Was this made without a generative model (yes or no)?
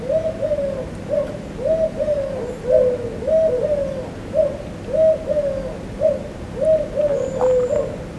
yes